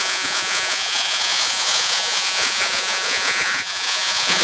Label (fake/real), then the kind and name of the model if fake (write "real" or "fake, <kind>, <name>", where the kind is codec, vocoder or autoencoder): fake, vocoder, Vocos